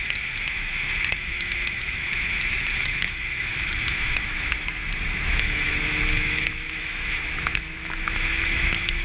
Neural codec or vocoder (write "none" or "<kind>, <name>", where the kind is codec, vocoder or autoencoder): autoencoder, DAC-VAE